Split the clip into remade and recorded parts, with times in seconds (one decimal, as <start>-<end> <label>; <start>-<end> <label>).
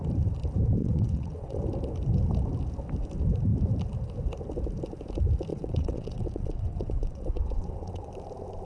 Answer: 0.0-0.8 recorded; 0.8-1.6 remade; 1.6-5.5 recorded; 5.5-8.1 remade; 8.1-8.6 recorded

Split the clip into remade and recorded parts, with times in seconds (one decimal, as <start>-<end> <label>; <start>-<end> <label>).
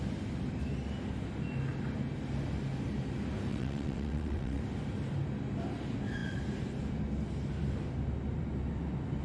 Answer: 0.0-3.5 recorded; 3.5-4.6 remade; 4.6-9.2 recorded